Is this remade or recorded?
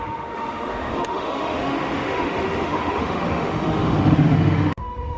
remade